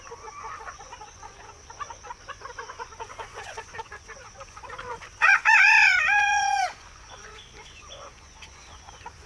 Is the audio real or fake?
fake